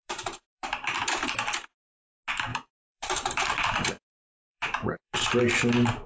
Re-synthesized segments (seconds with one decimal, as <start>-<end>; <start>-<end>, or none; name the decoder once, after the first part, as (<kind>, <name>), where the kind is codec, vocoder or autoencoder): 0.0-1.3 (vocoder, BigVGAN v2); 2.5-5.4